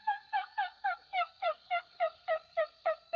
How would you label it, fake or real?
fake